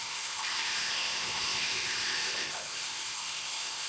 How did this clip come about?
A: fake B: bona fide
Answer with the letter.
A